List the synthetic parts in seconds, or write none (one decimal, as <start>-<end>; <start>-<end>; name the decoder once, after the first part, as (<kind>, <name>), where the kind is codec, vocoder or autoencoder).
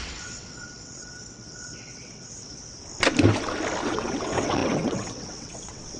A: 0.0-2.6 (vocoder, WaveNeXt); 3.8-6.0